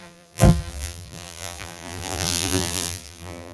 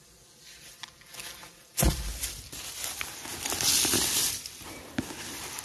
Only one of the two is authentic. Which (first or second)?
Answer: second